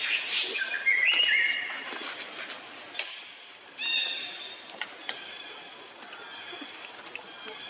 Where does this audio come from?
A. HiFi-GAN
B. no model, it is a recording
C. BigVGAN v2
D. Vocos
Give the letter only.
B